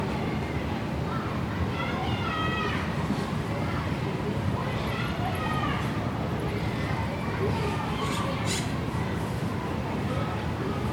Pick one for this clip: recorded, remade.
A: remade